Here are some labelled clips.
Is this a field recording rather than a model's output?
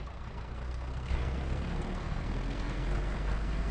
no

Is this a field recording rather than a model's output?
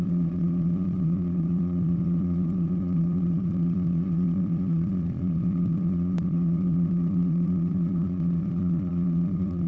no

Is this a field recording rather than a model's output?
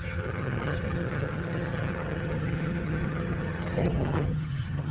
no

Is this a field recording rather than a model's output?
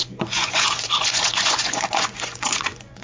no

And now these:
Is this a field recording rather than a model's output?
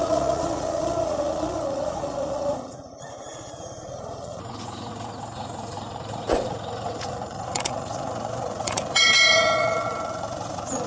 no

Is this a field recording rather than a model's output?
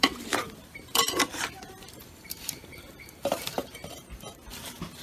no